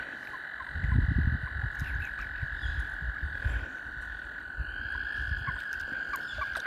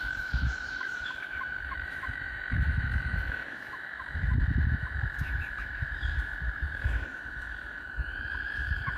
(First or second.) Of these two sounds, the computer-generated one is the second